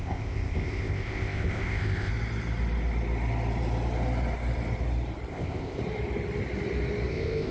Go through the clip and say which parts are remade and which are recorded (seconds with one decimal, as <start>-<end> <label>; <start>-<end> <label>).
0.0-2.1 remade; 2.1-5.3 recorded; 5.3-5.8 remade; 5.8-7.1 recorded; 7.1-7.5 remade